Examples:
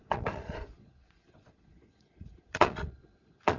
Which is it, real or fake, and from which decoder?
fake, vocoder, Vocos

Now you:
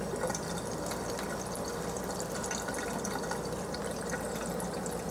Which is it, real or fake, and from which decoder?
real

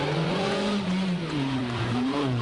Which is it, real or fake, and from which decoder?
fake, vocoder, Vocos